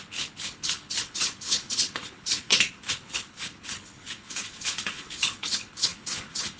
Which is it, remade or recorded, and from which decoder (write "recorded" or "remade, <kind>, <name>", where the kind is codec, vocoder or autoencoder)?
remade, codec, HILCodec